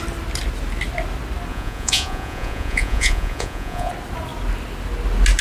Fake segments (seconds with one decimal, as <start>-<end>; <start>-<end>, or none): 1.5-3.9